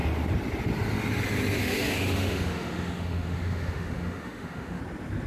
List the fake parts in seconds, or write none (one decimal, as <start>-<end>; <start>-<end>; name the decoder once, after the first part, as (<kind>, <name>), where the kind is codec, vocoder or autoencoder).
1.6-4.8 (autoencoder, DAC-VAE)